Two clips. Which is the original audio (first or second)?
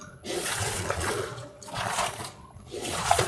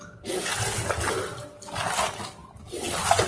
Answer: second